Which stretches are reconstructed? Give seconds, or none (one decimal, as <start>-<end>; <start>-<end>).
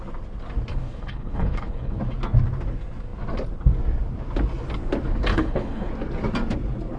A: 0.7-2.0; 5.3-5.9